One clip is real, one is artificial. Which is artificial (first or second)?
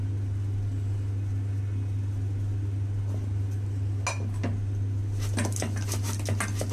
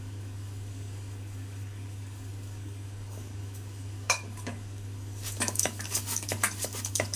second